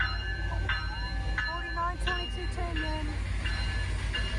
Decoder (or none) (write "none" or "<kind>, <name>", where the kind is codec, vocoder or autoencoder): none